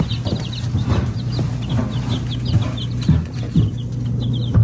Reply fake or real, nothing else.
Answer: real